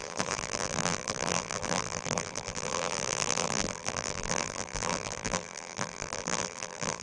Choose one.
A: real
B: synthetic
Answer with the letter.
B